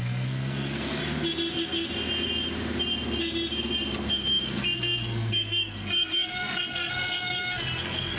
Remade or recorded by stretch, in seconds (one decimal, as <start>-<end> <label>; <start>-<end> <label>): 0.0-1.0 remade; 1.0-4.1 recorded; 4.1-8.2 remade